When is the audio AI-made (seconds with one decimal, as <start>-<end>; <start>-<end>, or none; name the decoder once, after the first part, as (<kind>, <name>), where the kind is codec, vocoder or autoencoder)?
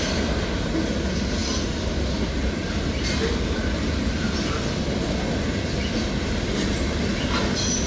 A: none